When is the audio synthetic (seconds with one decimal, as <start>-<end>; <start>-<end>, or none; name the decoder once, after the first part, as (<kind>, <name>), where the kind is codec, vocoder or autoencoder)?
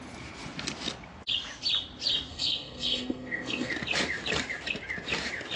2.3-3.7 (codec, SNAC)